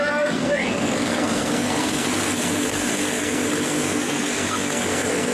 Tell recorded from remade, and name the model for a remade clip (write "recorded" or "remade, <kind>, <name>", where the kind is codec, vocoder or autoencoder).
remade, codec, SNAC